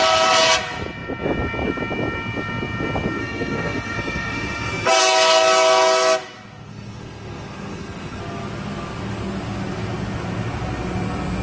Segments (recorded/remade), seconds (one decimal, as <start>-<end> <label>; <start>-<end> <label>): 0.0-3.2 recorded; 3.2-5.0 remade; 5.0-6.7 recorded; 6.7-8.2 remade; 8.2-11.4 recorded